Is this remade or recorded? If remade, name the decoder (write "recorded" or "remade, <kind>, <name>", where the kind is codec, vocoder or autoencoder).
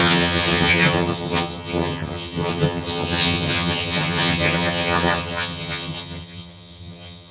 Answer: remade, vocoder, HiFi-GAN